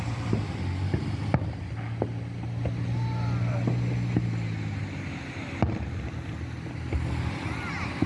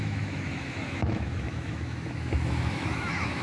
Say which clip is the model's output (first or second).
second